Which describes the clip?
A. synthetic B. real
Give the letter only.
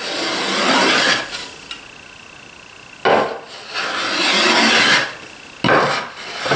B